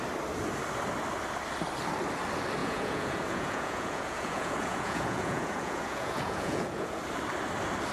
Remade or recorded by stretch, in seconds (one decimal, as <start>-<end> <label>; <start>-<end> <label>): 0.0-2.6 recorded; 2.6-7.0 remade; 7.0-7.9 recorded